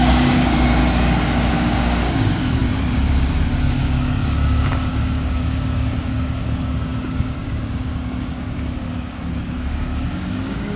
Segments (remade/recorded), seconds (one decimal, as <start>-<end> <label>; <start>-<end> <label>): 0.0-0.8 remade; 0.8-1.5 recorded; 1.5-10.8 remade